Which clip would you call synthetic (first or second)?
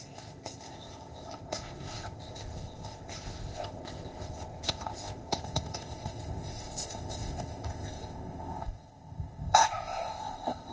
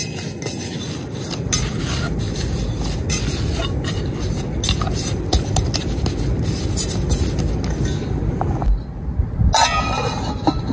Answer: first